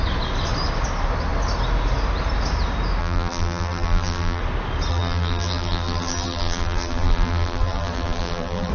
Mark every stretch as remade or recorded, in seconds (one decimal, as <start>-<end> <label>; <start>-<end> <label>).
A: 0.0-3.0 recorded; 3.0-4.4 remade; 4.4-4.9 recorded; 4.9-8.7 remade